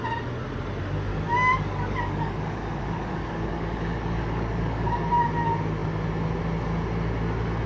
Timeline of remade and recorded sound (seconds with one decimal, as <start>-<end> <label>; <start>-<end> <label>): 0.0-1.1 recorded; 1.1-5.1 remade; 5.1-7.7 recorded